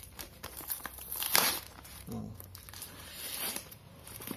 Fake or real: fake